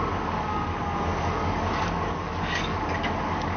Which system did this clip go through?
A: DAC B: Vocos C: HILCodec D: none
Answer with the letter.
A